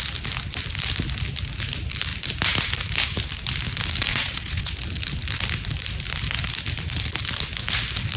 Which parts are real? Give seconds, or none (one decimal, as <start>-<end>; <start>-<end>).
0.0-4.1; 4.7-8.2

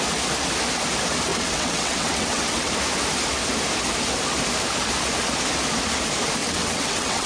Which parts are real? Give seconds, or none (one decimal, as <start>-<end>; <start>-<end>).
0.0-1.3; 2.7-6.4

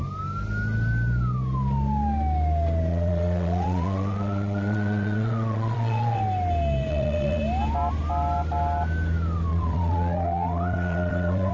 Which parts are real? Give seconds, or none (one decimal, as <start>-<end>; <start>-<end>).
0.0-2.9; 6.2-6.9; 7.4-9.5